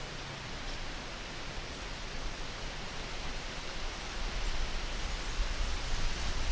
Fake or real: real